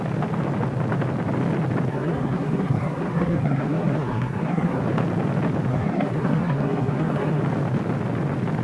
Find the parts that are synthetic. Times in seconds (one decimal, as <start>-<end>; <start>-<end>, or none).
1.9-4.8; 5.7-7.4